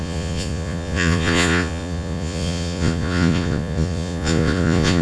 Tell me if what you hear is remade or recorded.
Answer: remade